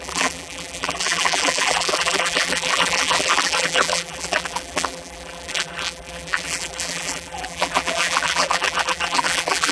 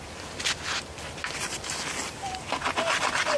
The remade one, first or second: first